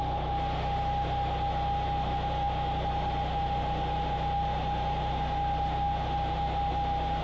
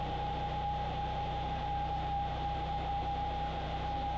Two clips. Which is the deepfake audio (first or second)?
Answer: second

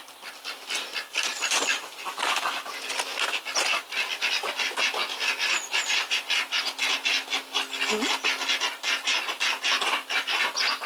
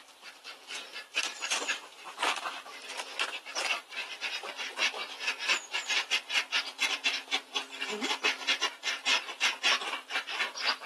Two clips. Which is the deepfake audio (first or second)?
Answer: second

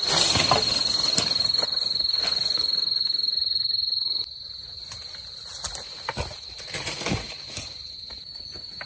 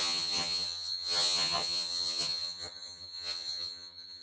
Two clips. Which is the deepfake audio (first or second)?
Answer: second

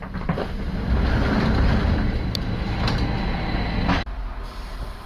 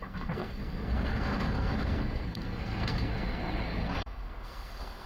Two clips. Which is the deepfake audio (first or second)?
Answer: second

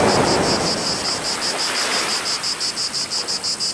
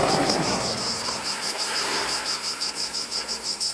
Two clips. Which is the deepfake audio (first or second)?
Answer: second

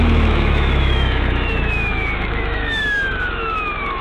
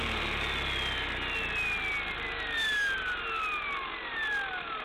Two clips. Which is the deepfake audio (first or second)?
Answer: first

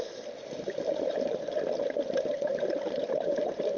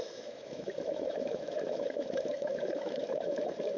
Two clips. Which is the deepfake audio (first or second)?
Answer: second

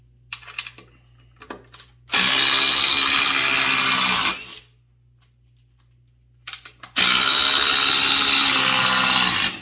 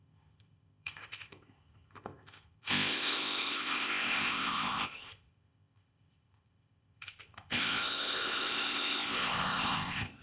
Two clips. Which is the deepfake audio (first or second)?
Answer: second